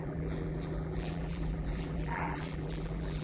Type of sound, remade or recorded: remade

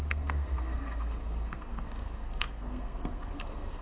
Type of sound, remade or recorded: remade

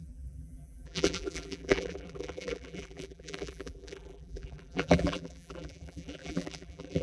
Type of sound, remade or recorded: remade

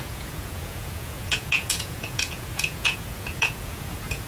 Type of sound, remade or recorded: remade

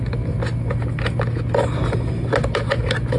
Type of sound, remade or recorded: recorded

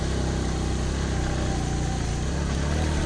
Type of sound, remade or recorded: recorded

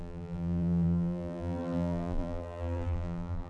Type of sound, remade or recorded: remade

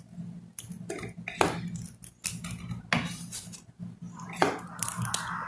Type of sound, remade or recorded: recorded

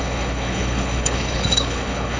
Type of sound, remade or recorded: remade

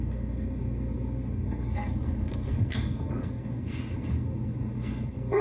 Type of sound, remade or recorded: remade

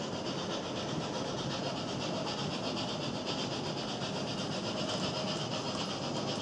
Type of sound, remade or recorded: recorded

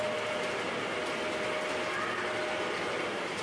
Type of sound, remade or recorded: recorded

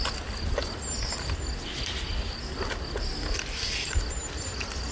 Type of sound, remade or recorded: recorded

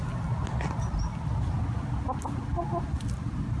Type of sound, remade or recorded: recorded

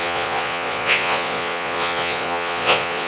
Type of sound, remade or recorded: remade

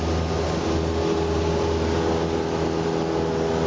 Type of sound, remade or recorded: recorded